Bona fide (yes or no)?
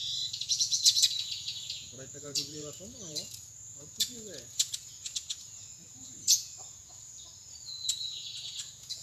no